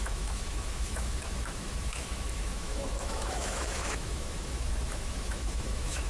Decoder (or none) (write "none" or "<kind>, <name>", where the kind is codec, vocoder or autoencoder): autoencoder, DAC-VAE